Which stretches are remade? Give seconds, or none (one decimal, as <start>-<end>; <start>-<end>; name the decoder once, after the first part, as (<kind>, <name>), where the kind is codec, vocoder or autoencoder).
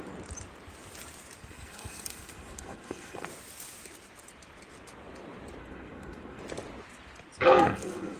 1.4-3.3 (codec, SNAC); 5.6-6.4; 7.5-8.2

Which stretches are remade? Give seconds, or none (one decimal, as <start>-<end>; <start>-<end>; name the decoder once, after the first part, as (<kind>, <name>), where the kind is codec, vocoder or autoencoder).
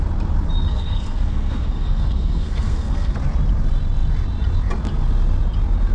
0.7-3.1 (codec, SNAC)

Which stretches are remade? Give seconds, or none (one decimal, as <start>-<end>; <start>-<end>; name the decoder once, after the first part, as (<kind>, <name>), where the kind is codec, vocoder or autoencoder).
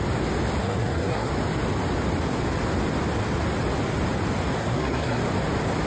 0.6-1.3 (codec, SNAC); 4.6-5.2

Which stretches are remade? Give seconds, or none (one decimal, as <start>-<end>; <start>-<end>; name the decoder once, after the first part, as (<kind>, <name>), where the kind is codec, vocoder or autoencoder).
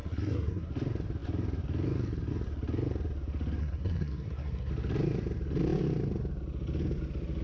0.0-0.7 (codec, SNAC); 3.6-4.7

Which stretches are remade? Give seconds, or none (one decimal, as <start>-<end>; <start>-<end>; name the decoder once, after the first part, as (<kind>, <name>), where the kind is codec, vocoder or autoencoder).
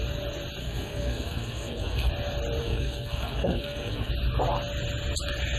0.6-2.1 (codec, SNAC); 2.6-4.1